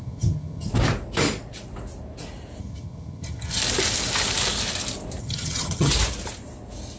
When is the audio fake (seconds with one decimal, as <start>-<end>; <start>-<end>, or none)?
0.0-0.7; 2.6-3.6; 5.2-5.9